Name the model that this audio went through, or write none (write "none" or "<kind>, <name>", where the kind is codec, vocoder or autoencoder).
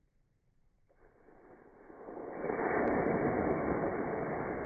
vocoder, BigVGAN v2